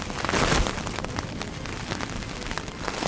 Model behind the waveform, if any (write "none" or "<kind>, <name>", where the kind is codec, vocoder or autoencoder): none